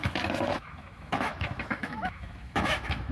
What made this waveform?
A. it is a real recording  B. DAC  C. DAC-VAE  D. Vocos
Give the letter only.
C